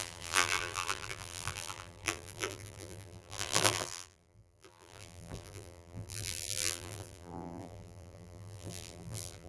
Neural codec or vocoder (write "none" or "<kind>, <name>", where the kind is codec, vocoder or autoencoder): vocoder, BigVGAN v2